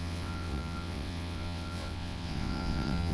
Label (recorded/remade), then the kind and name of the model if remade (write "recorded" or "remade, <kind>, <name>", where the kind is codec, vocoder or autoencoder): remade, vocoder, WaveNeXt